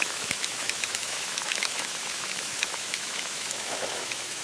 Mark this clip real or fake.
fake